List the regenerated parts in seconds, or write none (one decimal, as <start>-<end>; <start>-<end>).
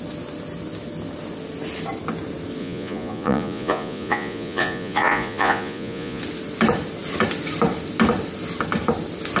2.6-6.2